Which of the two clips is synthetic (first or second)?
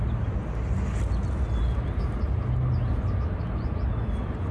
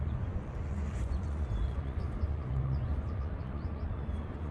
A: second